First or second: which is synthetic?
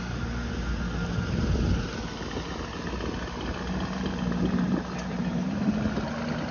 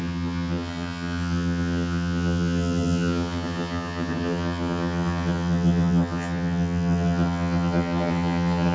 second